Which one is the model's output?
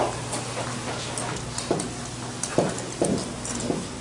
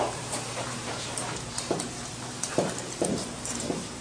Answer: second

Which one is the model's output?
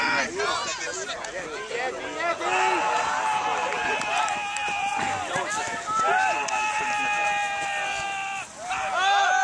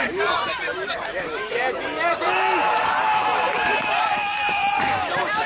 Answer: second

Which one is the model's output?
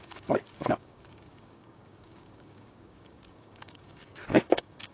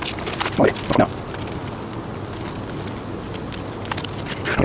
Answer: first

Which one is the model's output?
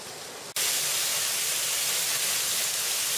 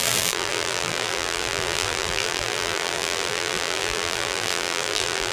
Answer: second